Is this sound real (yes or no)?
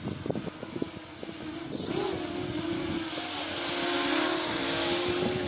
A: yes